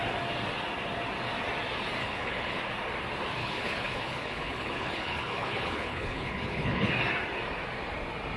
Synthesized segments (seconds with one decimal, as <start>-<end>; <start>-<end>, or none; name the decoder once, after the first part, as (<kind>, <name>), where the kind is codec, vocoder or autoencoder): 2.0-2.6 (codec, HILCodec); 3.4-6.9